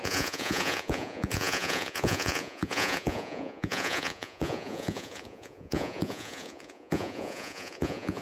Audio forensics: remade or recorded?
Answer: remade